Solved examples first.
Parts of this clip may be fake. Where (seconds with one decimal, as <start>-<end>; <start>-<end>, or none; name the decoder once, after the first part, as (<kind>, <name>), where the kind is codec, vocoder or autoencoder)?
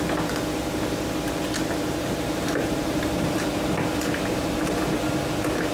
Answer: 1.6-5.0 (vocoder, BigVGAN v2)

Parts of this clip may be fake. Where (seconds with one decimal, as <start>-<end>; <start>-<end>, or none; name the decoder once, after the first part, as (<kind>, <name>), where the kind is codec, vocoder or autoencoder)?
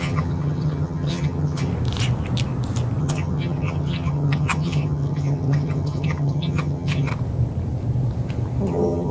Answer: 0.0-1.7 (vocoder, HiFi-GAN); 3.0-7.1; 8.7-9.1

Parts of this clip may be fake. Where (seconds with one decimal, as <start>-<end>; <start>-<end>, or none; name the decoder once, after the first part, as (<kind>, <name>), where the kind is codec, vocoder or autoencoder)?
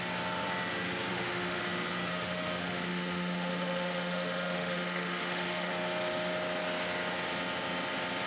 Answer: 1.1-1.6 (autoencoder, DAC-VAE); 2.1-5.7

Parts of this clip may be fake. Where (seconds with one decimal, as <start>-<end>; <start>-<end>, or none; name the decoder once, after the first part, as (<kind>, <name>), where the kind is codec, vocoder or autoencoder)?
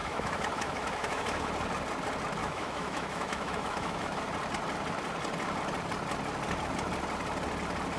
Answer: 0.0-1.4 (autoencoder, DAC-VAE); 2.4-4.2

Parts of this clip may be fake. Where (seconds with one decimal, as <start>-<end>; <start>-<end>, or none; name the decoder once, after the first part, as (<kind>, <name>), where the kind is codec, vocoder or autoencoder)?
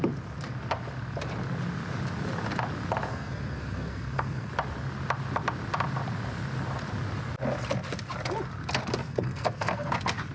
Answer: 3.1-4.5 (codec, SNAC); 9.0-9.9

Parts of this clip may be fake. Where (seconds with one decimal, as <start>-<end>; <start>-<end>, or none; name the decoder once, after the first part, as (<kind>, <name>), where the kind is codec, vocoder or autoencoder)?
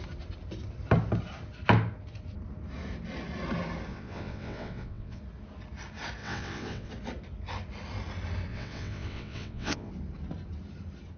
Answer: 3.9-5.2 (vocoder, WaveNeXt); 6.2-6.9; 8.5-9.9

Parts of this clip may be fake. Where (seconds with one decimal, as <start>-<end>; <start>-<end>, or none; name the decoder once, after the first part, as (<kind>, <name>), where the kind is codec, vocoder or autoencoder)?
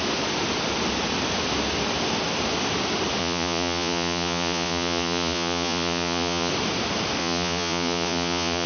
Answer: 3.2-6.5 (vocoder, Vocos); 7.2-8.7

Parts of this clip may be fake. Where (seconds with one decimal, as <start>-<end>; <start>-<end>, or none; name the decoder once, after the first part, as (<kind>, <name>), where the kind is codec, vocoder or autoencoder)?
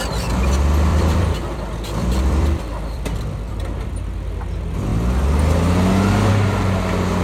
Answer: 0.9-3.9 (vocoder, BigVGAN v2)